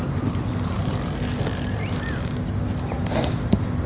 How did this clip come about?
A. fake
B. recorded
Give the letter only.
B